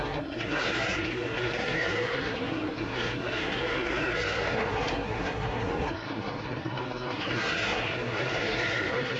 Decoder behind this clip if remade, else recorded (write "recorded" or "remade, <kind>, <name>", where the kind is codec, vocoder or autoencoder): remade, codec, SNAC